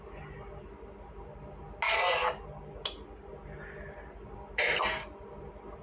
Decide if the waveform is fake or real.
real